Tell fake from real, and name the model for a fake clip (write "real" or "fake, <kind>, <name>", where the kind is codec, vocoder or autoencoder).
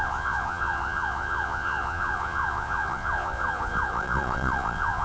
fake, vocoder, Vocos